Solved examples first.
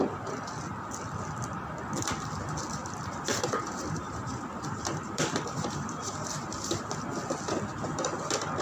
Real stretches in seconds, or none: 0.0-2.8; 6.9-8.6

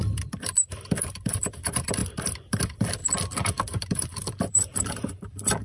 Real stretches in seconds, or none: none